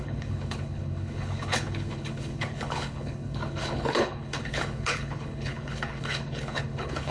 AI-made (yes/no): yes